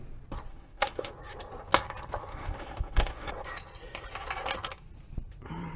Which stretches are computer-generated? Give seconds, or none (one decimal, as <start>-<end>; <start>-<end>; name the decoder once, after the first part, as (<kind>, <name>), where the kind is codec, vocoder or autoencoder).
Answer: 0.5-1.1 (autoencoder, DAC-VAE); 2.3-3.3